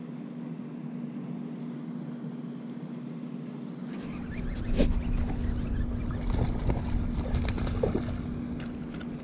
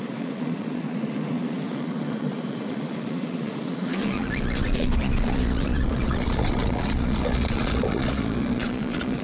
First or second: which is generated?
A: second